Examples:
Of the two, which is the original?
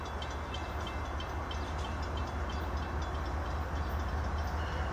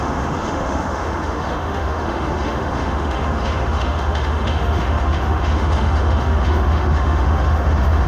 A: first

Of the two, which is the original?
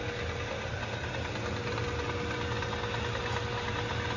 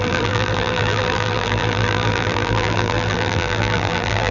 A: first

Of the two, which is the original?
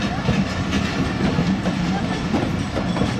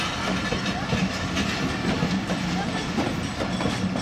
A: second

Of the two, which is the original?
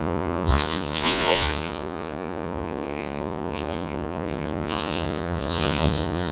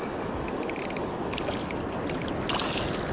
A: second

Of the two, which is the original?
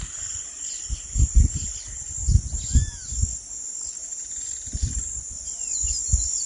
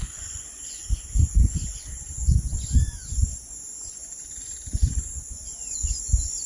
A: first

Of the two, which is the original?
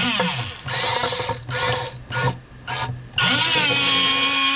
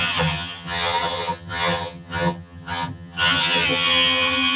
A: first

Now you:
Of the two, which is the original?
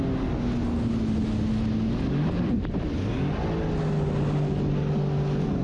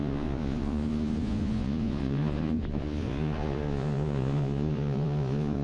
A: first